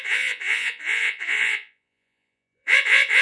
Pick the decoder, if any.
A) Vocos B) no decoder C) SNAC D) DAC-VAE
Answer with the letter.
A